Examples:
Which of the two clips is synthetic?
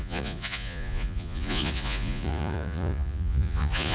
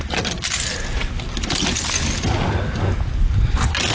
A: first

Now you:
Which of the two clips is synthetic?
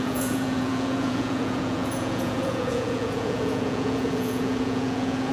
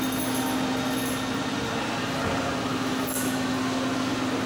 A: first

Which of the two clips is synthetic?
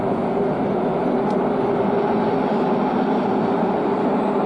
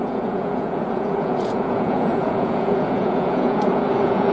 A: second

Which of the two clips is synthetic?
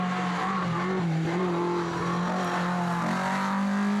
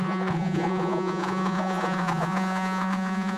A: second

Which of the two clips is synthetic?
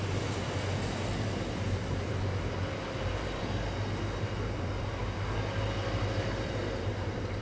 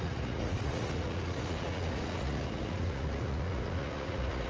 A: second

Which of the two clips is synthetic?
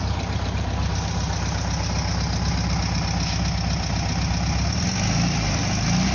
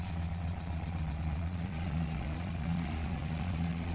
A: second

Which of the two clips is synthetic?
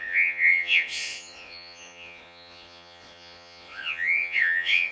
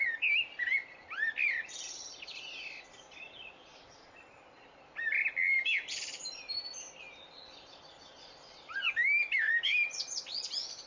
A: first